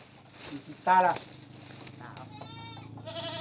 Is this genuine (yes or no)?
yes